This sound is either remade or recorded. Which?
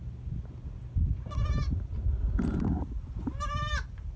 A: recorded